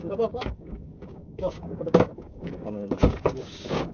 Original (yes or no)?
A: no